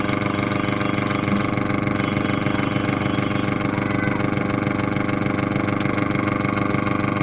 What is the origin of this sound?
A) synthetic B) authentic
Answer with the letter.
B